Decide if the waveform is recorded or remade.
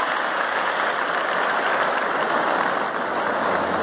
recorded